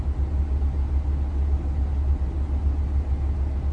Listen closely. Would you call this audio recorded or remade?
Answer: recorded